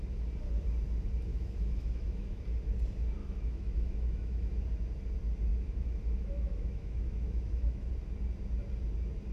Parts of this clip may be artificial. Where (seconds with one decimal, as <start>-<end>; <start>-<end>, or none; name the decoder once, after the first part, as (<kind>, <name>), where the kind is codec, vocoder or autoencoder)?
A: 1.3-2.4 (autoencoder, DAC-VAE); 3.2-4.6; 5.5-7.9